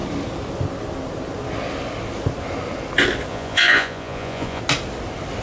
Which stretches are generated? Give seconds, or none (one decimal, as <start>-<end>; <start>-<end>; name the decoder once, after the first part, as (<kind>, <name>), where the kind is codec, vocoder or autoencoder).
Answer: 3.3-4.6 (vocoder, Vocos)